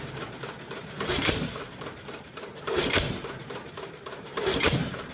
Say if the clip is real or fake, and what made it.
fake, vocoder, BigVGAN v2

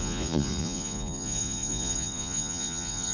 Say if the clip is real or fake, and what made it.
fake, vocoder, Vocos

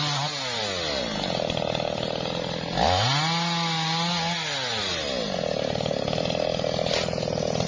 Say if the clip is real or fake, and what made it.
real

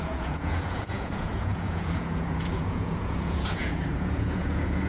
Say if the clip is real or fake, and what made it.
fake, vocoder, Vocos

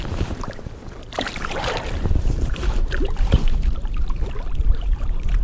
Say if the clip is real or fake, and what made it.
fake, vocoder, BigVGAN v2